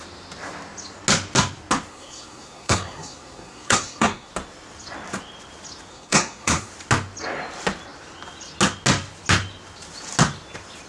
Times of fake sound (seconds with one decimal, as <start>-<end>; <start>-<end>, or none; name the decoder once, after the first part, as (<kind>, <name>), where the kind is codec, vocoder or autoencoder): 1.9-4.3 (codec, SNAC); 5.9-6.7